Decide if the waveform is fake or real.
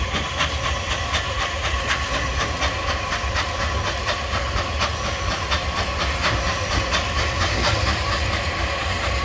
real